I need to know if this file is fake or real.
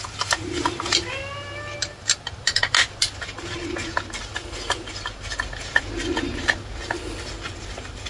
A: real